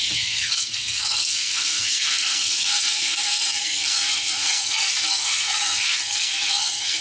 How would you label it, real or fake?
fake